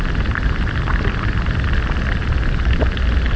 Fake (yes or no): no